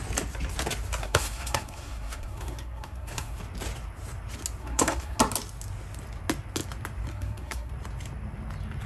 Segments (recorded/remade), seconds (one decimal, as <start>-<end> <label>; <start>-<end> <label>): 0.0-1.0 recorded; 1.0-3.4 remade; 3.4-4.6 recorded; 4.6-5.2 remade; 5.2-7.1 recorded; 7.1-7.7 remade; 7.7-8.9 recorded